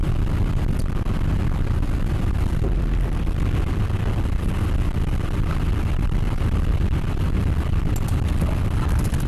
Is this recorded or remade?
recorded